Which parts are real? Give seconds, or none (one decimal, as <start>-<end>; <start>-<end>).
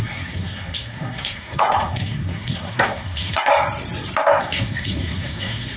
3.5-4.4